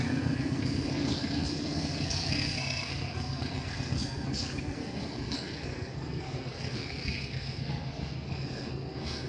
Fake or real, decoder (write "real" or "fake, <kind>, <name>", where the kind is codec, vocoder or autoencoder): fake, codec, SNAC